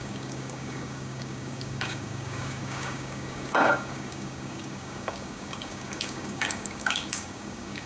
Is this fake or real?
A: fake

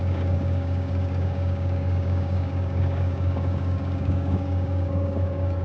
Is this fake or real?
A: fake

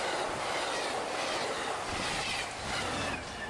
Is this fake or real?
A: real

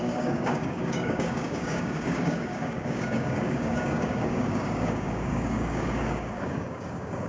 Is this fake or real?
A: fake